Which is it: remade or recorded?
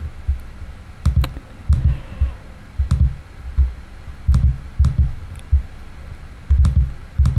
recorded